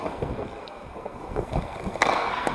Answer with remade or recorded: remade